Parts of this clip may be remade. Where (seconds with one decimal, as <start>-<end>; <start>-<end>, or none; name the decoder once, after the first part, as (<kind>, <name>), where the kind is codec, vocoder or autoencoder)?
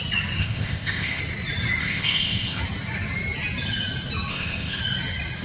0.4-1.2 (codec, ZipCodec); 1.8-2.6; 4.3-4.8